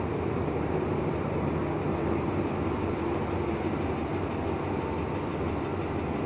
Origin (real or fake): real